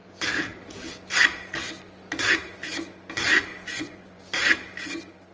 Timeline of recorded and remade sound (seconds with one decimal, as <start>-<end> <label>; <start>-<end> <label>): 0.0-3.5 recorded; 3.5-4.2 remade; 4.2-5.3 recorded